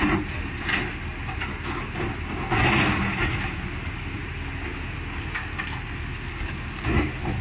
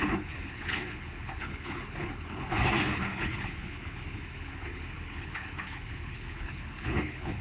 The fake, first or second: second